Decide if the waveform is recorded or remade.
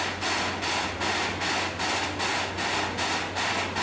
recorded